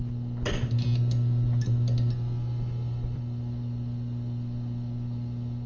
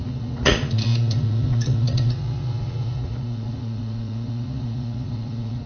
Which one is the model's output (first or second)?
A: second